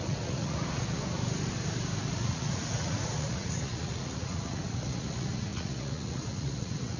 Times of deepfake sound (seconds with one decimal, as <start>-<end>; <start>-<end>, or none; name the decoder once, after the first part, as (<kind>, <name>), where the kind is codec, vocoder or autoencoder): 0.0-1.0 (vocoder, Vocos); 2.1-7.0

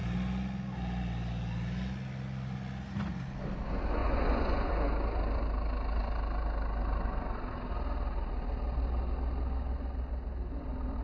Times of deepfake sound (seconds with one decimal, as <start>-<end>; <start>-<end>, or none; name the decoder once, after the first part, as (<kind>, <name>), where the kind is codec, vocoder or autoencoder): 4.0-4.7 (vocoder, Vocos)

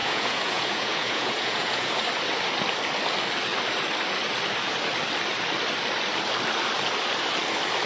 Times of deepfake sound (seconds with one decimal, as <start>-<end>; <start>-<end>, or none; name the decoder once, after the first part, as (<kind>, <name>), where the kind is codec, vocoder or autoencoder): 0.0-2.0 (vocoder, Vocos)